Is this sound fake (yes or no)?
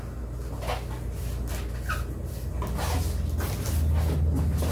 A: no